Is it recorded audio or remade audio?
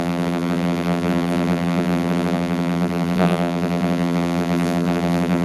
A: remade